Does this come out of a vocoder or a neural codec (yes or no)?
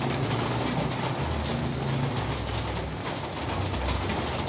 no